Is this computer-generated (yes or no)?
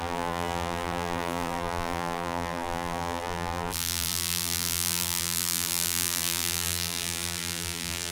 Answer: yes